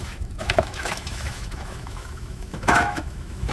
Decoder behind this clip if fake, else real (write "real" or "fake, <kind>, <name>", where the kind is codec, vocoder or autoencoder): fake, autoencoder, DAC-VAE